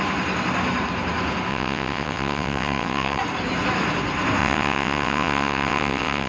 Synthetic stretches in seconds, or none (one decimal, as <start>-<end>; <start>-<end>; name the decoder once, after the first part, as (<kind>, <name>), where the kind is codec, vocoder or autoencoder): 1.5-3.2 (vocoder, WaveNeXt); 4.4-6.3